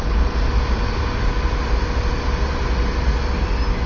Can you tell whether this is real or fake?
real